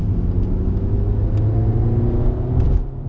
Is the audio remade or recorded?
recorded